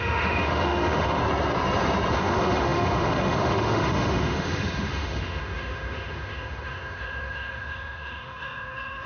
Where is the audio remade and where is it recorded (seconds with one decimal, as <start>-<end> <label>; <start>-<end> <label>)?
0.0-1.2 remade; 1.2-2.1 recorded; 2.1-9.1 remade